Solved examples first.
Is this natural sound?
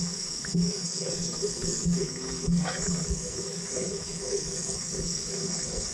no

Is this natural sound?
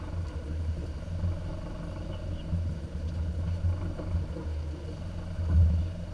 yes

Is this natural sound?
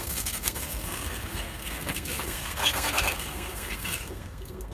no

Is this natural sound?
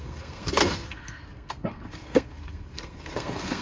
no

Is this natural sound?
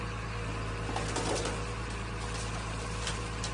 yes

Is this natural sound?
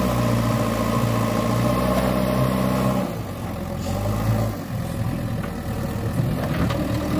yes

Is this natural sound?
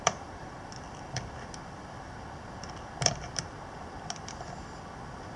yes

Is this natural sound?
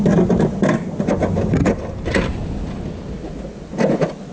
yes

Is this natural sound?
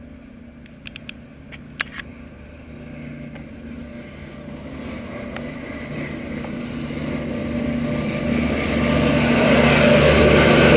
yes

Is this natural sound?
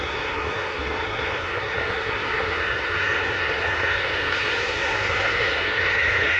no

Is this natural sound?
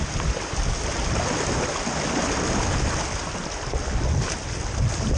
yes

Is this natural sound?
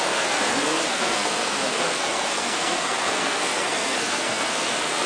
no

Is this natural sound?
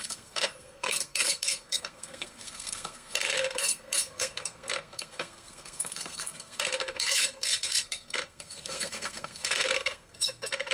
no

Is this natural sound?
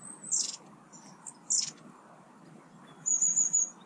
yes